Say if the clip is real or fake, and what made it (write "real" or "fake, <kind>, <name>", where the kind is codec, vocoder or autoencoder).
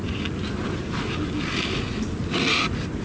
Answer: real